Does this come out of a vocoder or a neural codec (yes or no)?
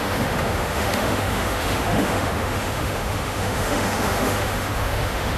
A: yes